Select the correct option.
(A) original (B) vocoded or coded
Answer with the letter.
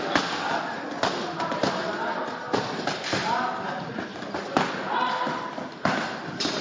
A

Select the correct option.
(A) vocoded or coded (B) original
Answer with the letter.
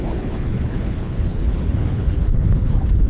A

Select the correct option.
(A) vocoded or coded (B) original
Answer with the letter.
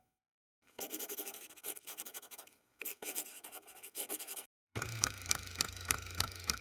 A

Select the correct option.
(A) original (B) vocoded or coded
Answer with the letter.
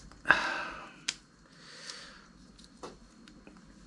A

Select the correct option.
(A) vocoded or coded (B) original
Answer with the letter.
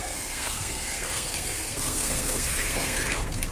A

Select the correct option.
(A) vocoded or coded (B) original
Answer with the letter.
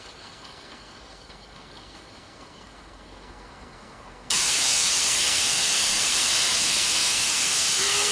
A